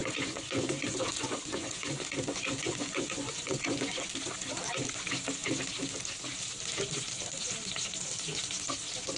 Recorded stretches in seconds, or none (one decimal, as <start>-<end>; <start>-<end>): 4.1-9.2